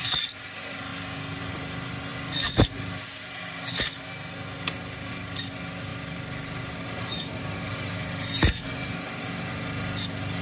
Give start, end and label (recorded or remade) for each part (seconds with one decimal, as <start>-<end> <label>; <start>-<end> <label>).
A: 0.0-10.4 recorded